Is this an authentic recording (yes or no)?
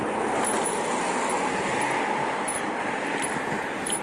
yes